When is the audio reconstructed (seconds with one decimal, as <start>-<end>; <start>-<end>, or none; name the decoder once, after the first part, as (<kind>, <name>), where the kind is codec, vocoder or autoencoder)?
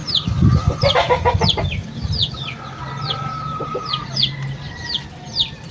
0.8-2.2 (vocoder, BigVGAN v2); 3.0-5.7